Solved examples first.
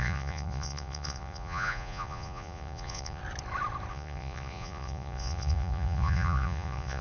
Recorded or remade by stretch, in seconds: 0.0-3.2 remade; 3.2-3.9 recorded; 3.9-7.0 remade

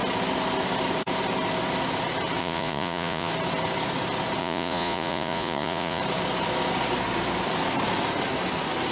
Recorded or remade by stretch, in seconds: 0.0-2.4 recorded; 2.4-3.3 remade; 3.3-4.4 recorded; 4.4-6.0 remade; 6.0-8.9 recorded